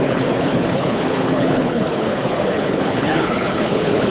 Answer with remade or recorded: remade